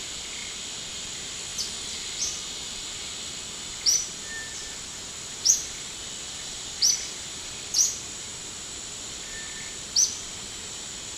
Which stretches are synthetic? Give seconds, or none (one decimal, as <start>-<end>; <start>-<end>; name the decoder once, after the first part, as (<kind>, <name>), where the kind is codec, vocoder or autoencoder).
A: 0.0-1.5 (vocoder, BigVGAN v2); 3.7-8.3